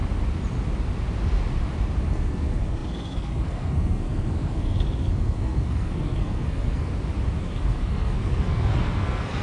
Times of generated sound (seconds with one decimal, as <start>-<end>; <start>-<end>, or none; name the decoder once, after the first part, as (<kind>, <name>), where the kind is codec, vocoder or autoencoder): 2.1-6.9 (codec, SNAC); 7.4-9.4